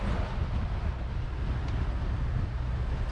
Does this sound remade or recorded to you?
recorded